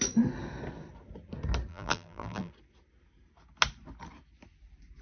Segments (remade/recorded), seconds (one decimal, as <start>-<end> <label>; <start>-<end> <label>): 0.0-1.7 recorded; 1.7-2.5 remade; 2.5-5.0 recorded